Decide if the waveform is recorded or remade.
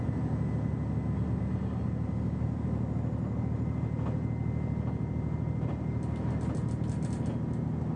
recorded